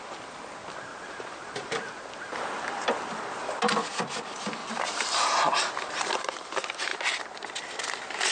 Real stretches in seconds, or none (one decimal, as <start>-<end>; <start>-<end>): 0.0-0.9; 3.1-4.6; 5.3-8.3